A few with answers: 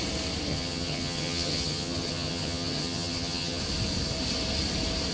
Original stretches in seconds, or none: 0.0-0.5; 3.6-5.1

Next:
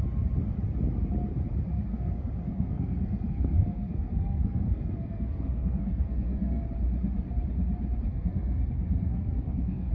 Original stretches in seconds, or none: 0.0-1.9; 6.6-8.1

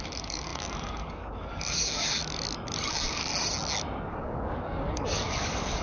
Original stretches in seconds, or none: 2.2-2.9; 3.3-4.1

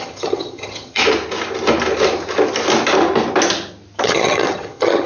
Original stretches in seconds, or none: 1.0-4.0

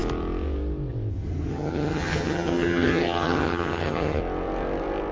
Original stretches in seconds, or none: 0.0-1.5; 4.2-5.1

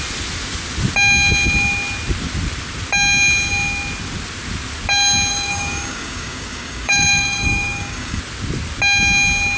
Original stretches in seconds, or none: 0.0-5.3; 8.2-9.6